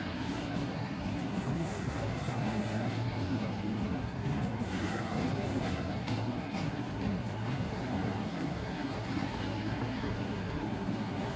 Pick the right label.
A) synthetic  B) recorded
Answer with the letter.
A